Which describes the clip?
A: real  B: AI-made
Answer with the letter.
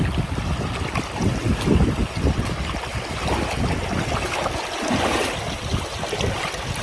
A